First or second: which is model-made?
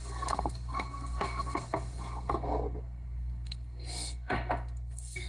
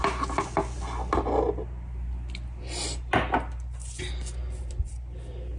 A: first